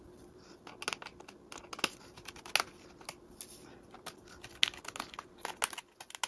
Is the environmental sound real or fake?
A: real